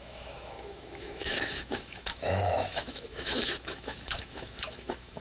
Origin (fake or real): fake